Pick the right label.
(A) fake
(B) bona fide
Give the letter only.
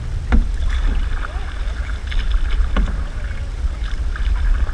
B